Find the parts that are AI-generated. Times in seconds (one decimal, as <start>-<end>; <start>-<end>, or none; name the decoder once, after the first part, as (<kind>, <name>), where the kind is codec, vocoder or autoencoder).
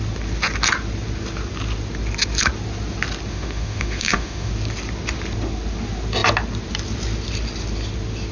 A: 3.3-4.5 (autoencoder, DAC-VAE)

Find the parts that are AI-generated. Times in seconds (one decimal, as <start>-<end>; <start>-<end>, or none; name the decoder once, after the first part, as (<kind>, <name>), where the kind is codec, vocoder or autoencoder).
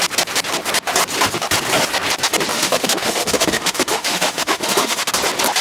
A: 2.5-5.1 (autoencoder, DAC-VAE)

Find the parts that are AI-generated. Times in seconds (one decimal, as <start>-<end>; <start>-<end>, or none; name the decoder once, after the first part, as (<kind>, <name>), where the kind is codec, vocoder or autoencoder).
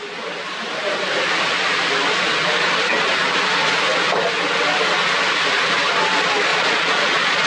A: 6.5-7.5 (vocoder, Vocos)